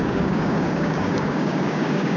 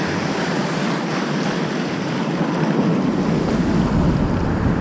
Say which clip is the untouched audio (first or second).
second